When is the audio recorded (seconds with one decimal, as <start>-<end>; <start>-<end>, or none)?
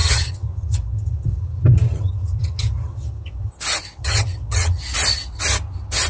3.5-4.0; 4.8-6.1